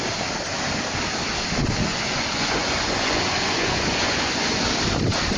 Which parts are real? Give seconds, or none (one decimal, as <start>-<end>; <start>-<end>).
0.0-1.9; 4.6-5.4